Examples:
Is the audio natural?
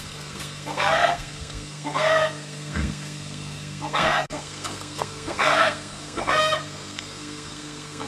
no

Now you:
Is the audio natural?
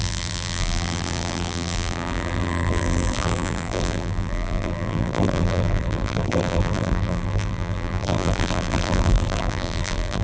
no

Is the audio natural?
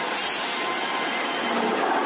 yes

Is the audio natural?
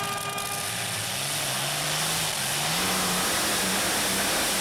yes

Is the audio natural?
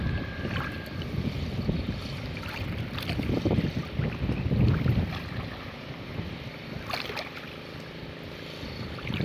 yes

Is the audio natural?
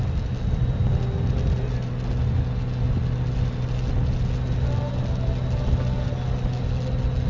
yes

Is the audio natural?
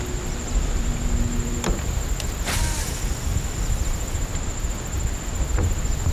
yes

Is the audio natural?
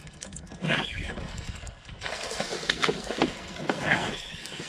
no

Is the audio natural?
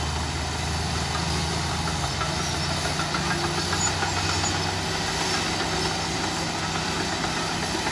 yes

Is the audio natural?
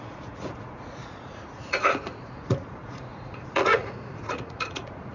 no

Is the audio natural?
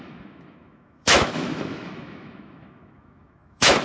no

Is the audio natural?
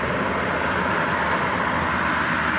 yes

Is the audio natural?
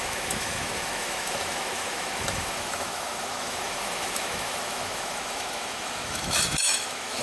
no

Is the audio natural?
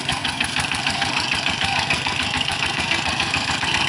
no